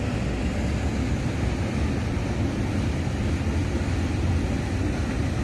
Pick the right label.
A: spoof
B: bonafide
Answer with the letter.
B